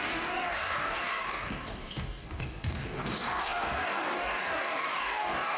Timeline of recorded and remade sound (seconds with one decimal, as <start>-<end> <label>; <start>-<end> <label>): 0.0-5.6 remade